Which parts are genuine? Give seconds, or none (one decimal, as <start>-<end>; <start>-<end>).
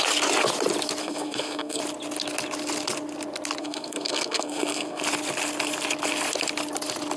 0.0-1.0; 1.8-3.6; 5.0-7.2